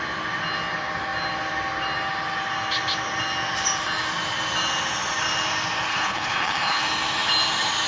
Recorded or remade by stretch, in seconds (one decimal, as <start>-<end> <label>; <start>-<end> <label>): 0.0-5.9 recorded; 5.9-6.8 remade; 6.8-7.9 recorded